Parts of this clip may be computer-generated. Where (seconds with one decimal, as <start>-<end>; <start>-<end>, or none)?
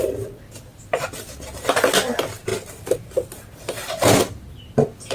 none